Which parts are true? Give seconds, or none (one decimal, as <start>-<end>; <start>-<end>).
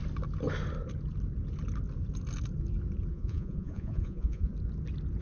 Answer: 0.0-3.1; 4.5-5.2